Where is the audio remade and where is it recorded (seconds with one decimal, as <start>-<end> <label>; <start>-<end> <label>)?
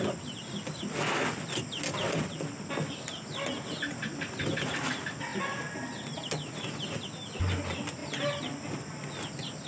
0.0-9.7 recorded